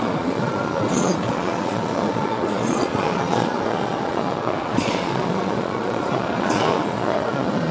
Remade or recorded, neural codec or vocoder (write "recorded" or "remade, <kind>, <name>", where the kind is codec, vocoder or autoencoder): remade, vocoder, Vocos